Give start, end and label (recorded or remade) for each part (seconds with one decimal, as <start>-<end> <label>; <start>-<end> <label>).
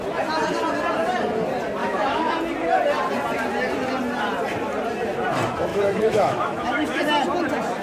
0.0-1.8 recorded; 1.8-2.3 remade; 2.3-5.7 recorded; 5.7-7.0 remade; 7.0-7.8 recorded